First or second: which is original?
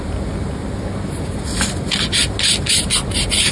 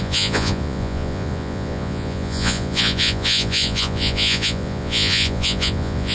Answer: first